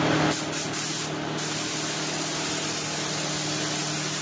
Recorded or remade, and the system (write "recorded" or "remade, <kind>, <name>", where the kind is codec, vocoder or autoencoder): recorded